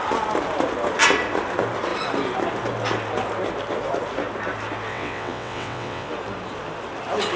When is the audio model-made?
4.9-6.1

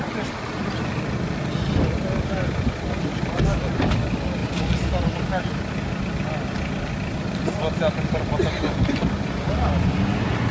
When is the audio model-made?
none

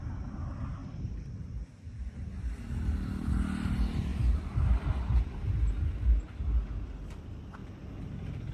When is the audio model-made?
0.8-2.6; 7.6-8.5

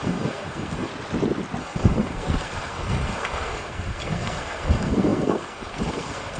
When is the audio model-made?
0.0-0.9; 1.6-6.4

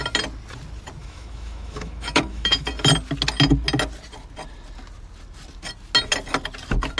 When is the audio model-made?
1.0-2.7

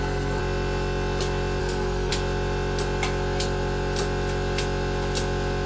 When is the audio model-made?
0.0-0.4; 1.6-2.1